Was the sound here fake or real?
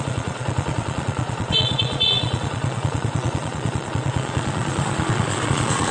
fake